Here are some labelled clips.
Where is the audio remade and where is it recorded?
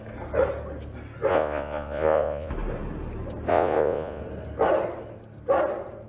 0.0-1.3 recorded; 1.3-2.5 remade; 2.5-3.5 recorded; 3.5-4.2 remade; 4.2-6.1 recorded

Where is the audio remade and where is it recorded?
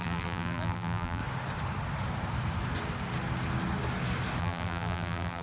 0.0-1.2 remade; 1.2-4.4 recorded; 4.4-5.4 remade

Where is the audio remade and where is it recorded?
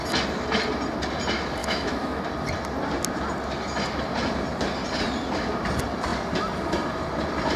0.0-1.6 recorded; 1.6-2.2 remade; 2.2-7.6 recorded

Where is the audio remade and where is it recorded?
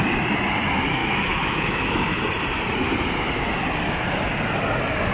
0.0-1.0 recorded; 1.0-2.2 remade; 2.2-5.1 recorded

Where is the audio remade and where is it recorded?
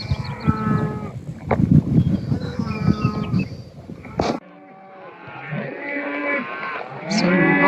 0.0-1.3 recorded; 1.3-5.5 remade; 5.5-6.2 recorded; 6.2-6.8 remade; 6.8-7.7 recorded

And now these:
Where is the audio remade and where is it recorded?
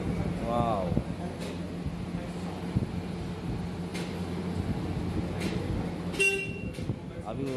0.0-7.6 recorded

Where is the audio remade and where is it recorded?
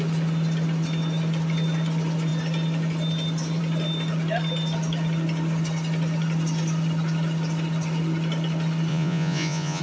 0.0-8.9 recorded; 8.9-9.8 remade